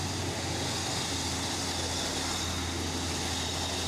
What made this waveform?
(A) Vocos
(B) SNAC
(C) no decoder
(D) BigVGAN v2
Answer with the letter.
C